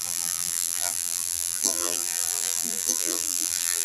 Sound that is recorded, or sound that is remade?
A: remade